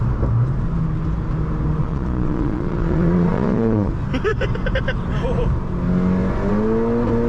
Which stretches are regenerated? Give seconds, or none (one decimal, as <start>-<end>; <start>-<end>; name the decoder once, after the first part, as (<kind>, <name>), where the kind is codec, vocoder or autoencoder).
1.8-3.9 (vocoder, Vocos)